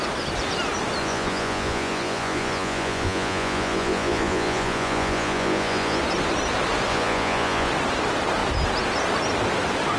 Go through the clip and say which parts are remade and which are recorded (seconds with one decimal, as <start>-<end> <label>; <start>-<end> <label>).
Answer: 0.0-1.0 recorded; 1.0-6.0 remade; 6.0-6.9 recorded; 6.9-7.7 remade; 7.7-10.0 recorded